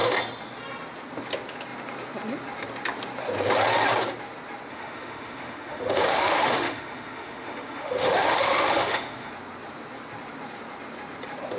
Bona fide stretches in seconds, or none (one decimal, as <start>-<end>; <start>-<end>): 0.0-4.7; 9.3-11.6